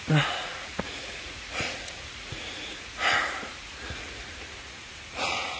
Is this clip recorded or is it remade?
remade